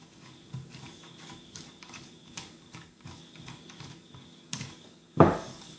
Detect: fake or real fake